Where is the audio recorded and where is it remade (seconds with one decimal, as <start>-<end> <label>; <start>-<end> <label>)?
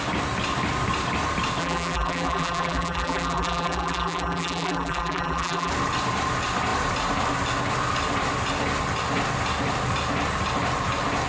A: 0.0-1.6 recorded; 1.6-5.7 remade; 5.7-11.3 recorded